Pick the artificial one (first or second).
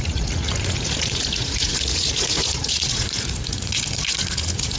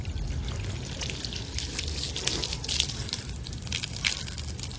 first